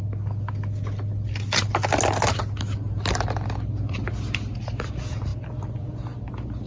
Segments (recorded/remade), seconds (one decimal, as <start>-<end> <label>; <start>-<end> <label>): 0.0-6.7 recorded